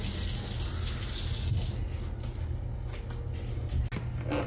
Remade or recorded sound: recorded